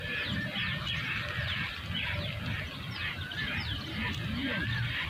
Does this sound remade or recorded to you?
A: recorded